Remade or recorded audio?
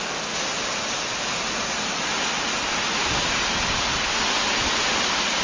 recorded